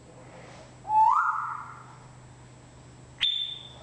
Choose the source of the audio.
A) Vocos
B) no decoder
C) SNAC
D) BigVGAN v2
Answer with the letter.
B